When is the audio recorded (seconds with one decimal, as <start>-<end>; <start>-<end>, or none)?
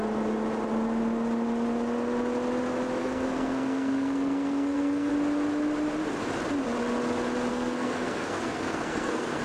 0.0-3.0; 5.1-7.5